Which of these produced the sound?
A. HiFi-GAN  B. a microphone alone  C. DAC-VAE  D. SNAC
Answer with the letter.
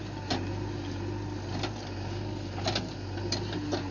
B